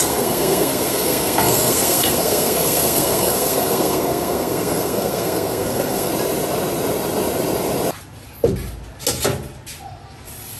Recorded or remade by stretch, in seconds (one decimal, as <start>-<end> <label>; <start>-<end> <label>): 0.0-6.1 remade; 6.1-10.6 recorded